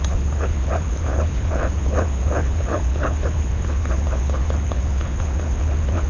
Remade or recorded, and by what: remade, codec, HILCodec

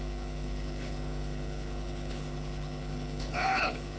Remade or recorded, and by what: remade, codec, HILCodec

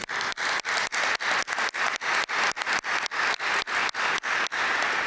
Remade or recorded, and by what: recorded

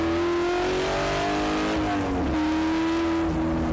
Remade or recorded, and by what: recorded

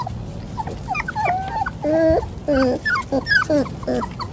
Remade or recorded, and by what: recorded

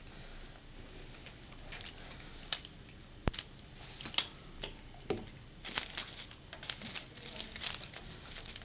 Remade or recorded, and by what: recorded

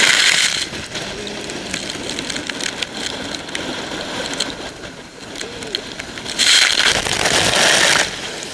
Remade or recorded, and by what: recorded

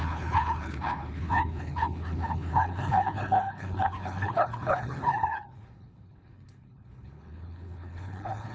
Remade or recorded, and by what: remade, codec, HILCodec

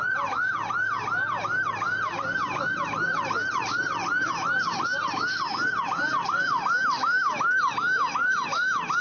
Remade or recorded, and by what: recorded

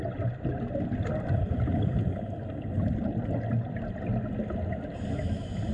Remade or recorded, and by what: recorded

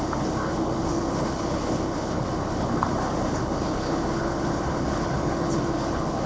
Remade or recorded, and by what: remade, codec, HILCodec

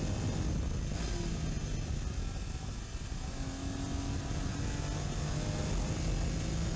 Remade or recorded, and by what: recorded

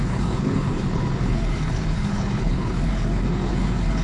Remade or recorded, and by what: remade, codec, HILCodec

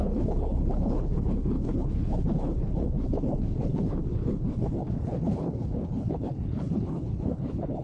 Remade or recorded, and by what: remade, codec, HILCodec